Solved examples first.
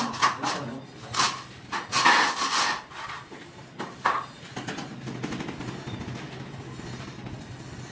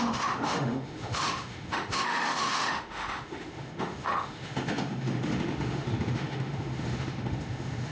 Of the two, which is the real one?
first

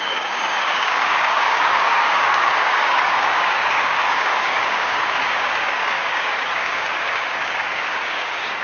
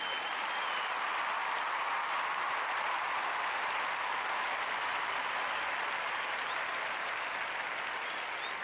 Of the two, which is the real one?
second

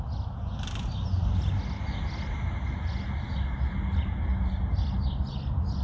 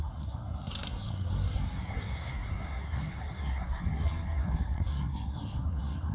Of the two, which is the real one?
first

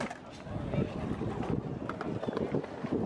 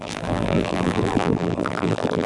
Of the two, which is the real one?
first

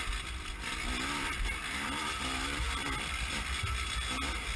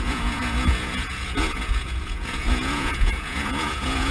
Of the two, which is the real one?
first